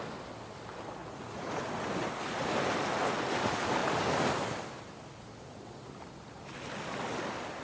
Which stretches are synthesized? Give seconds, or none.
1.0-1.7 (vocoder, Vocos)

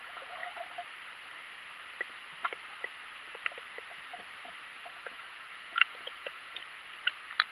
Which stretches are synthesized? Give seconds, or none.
0.0-0.4 (vocoder, Vocos); 4.9-6.6

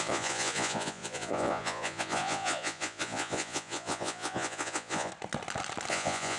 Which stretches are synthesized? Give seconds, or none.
0.0-5.1 (vocoder, Vocos); 5.9-6.4

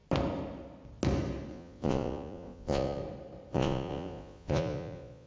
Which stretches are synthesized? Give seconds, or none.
1.5-3.0 (vocoder, Vocos); 3.5-5.3

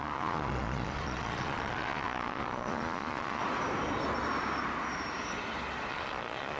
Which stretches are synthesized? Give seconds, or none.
0.0-3.4 (vocoder, Vocos); 5.9-6.6